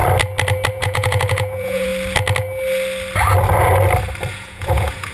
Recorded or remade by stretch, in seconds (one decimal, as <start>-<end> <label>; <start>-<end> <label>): 0.0-0.7 recorded; 0.7-1.9 remade; 1.9-4.3 recorded; 4.3-5.1 remade